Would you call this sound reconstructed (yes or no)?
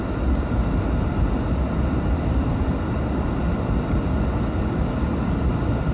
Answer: no